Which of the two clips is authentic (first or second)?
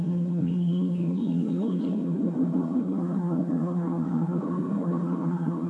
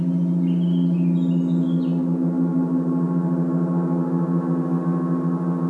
second